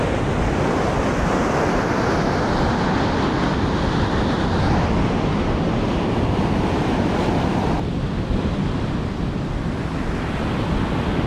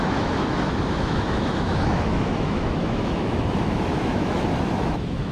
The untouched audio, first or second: first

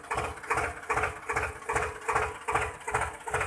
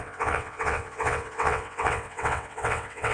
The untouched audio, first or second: first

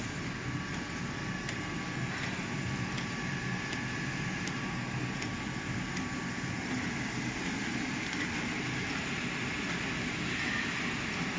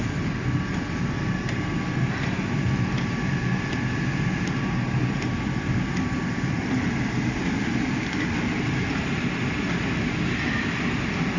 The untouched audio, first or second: first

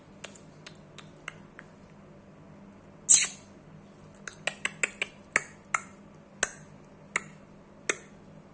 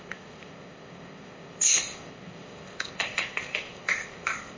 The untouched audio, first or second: first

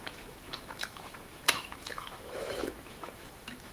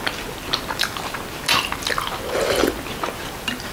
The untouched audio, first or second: second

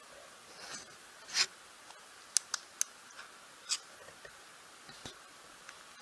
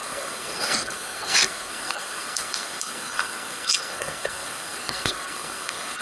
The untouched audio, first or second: first